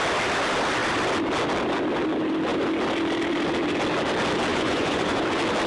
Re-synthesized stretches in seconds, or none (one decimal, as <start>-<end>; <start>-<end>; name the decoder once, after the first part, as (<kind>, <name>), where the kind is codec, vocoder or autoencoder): 4.5-5.2 (vocoder, Vocos)